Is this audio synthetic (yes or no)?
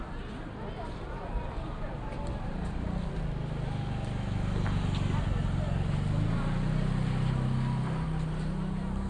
no